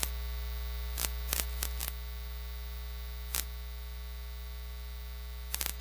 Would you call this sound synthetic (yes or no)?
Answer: no